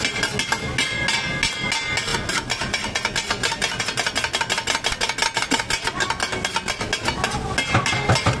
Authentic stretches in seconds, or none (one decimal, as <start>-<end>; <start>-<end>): 0.0-8.4